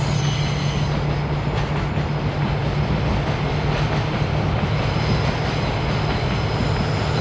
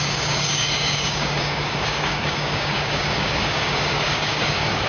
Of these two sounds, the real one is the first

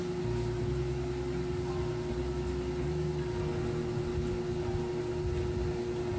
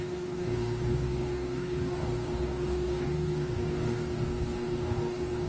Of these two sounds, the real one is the first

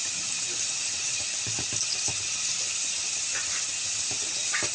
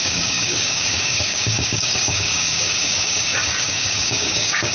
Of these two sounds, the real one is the first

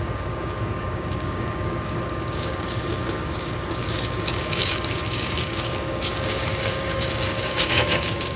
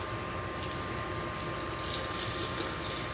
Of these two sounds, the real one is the second